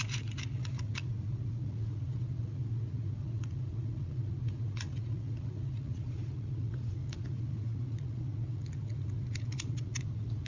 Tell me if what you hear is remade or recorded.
remade